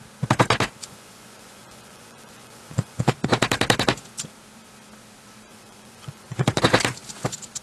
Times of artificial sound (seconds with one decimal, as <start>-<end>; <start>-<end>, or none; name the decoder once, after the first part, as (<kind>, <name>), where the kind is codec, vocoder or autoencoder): 0.8-3.1 (vocoder, Vocos); 5.5-6.6

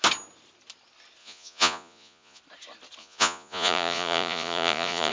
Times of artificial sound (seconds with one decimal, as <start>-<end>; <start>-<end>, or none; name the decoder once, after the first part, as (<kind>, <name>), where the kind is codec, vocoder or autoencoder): 1.2-2.4 (vocoder, Vocos); 3.0-5.1